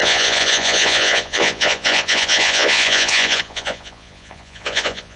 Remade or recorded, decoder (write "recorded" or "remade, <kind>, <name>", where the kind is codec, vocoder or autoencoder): remade, vocoder, Vocos